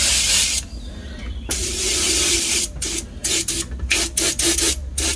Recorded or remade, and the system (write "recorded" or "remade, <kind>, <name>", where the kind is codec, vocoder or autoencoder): recorded